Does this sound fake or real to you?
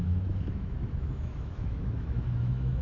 fake